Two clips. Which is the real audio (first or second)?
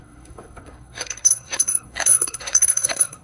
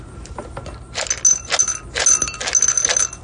second